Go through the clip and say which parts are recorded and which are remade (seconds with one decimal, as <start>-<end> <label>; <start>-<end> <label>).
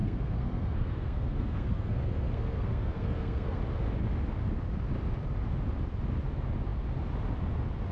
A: 0.0-3.6 remade; 3.6-7.9 recorded